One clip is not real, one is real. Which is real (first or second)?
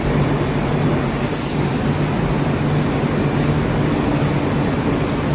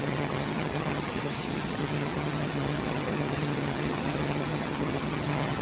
first